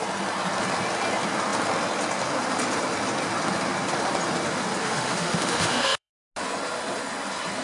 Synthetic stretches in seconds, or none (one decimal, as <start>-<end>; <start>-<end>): 4.8-6.1

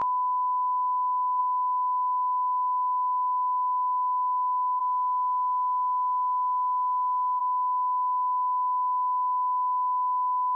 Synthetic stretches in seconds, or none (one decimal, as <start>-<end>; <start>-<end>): 0.0-1.4

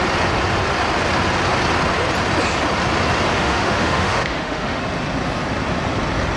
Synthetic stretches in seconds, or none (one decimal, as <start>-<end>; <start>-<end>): 3.3-4.8

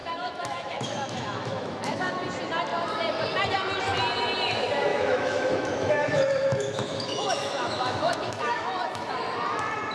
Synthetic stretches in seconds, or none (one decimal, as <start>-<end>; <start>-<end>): 0.0-2.1; 4.9-9.1

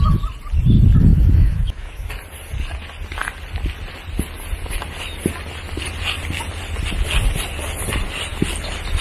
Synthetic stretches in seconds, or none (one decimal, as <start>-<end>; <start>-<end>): 1.1-2.1

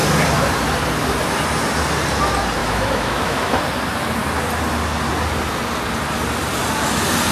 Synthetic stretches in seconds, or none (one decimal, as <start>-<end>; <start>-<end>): 2.6-3.6

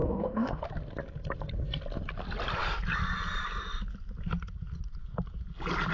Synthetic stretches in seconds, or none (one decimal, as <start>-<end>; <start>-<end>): 0.0-0.6

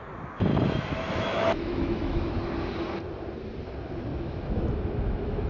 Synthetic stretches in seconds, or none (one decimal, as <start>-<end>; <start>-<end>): 0.5-2.4; 4.1-5.5